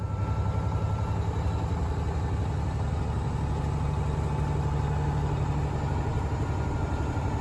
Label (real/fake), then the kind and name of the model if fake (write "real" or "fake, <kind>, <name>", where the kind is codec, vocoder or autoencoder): real